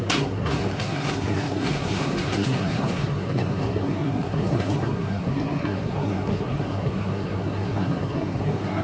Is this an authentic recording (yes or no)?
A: no